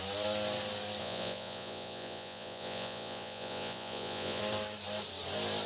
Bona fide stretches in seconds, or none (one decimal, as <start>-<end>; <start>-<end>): 0.0-1.0; 4.4-5.7